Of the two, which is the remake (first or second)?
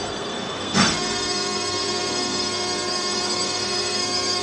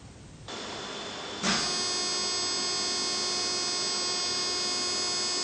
first